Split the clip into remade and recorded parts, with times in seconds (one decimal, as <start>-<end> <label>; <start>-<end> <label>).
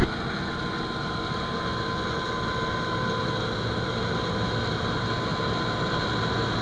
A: 0.0-6.6 recorded